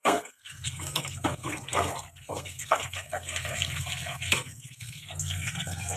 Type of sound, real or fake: fake